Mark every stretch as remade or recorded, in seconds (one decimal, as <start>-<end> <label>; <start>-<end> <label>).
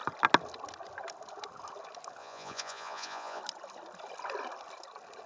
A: 0.0-2.2 recorded; 2.2-3.4 remade; 3.4-5.3 recorded